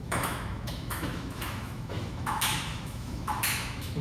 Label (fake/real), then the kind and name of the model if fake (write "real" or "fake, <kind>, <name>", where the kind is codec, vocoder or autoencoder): fake, autoencoder, DAC-VAE